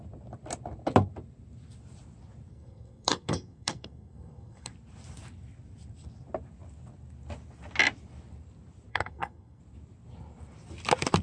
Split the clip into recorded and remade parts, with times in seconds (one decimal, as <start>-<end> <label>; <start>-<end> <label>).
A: 0.0-2.5 recorded; 2.5-4.7 remade; 4.7-8.9 recorded; 8.9-9.6 remade; 9.6-11.2 recorded